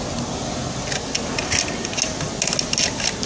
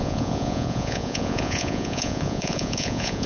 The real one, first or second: first